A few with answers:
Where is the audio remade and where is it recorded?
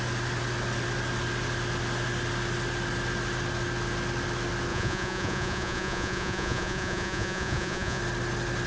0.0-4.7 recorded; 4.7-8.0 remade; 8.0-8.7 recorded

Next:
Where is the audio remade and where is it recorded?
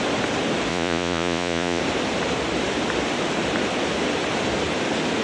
0.0-0.7 recorded; 0.7-1.8 remade; 1.8-5.2 recorded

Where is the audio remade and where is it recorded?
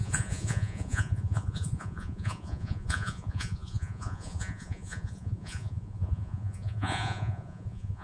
0.0-8.0 remade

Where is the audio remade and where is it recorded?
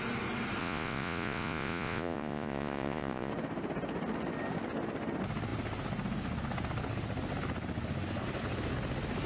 0.0-0.6 recorded; 0.6-3.3 remade; 3.3-9.3 recorded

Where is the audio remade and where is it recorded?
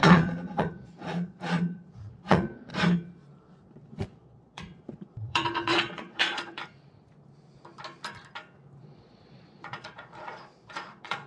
0.0-2.7 remade; 2.7-3.7 recorded; 3.7-6.6 remade; 6.6-8.8 recorded; 8.8-11.3 remade